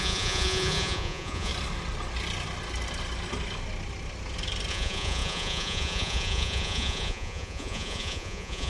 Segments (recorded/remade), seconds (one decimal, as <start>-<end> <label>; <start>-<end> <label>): 0.0-1.5 remade; 1.5-4.7 recorded; 4.7-8.7 remade